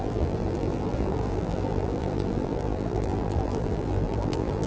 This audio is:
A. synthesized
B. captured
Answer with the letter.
A